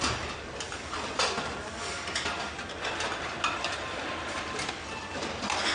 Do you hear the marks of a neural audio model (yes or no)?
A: no